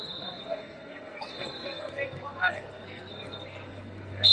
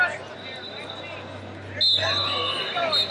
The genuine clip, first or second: second